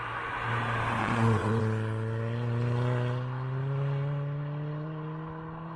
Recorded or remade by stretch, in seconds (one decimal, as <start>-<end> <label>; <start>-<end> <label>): 0.0-1.0 recorded; 1.0-1.6 remade; 1.6-5.8 recorded

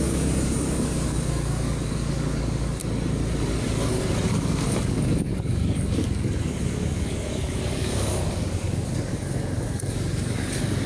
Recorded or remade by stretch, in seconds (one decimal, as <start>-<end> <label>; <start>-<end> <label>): 0.0-2.8 remade; 2.8-3.9 recorded; 3.9-10.9 remade

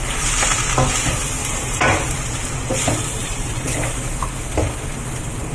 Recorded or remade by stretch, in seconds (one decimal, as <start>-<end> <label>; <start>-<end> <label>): 0.0-1.4 recorded; 1.4-2.1 remade; 2.1-3.2 recorded; 3.2-3.8 remade; 3.8-5.5 recorded